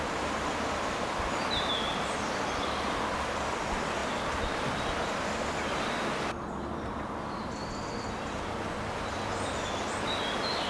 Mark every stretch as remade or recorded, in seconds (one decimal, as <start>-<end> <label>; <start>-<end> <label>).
0.0-10.7 recorded

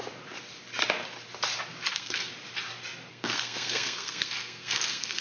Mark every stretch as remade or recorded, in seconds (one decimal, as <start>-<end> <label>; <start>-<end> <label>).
0.0-1.9 recorded; 1.9-2.3 remade; 2.3-3.1 recorded; 3.1-5.2 remade

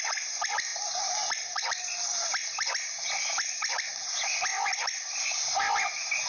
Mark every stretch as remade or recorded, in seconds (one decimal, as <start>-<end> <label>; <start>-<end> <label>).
0.0-6.3 recorded

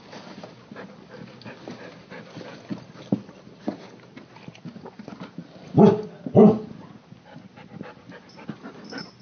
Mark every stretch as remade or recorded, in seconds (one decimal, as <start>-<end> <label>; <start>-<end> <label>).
0.0-9.2 recorded

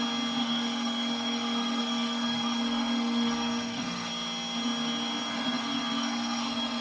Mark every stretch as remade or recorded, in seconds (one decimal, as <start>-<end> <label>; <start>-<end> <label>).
0.0-0.4 recorded; 0.4-4.1 remade; 4.1-5.3 recorded; 5.3-6.8 remade

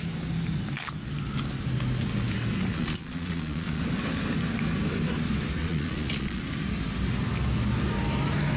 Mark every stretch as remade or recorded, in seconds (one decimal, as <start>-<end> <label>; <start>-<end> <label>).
0.0-2.7 recorded; 2.7-3.8 remade; 3.8-5.6 recorded; 5.6-6.4 remade; 6.4-8.6 recorded

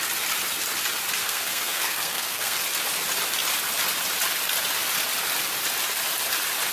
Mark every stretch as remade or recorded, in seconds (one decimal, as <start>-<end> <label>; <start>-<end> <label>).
0.0-1.2 recorded; 1.2-2.6 remade; 2.6-6.7 recorded